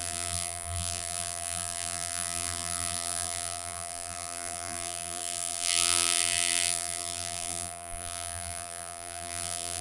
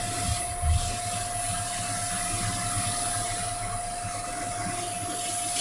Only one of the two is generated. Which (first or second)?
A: first